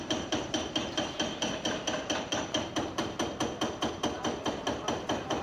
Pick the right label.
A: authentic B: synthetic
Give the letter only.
B